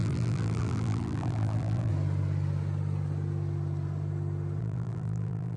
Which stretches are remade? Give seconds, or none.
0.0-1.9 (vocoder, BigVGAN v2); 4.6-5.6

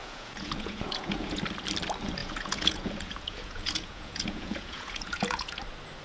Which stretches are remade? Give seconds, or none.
0.0-1.4 (vocoder, Vocos); 2.2-5.6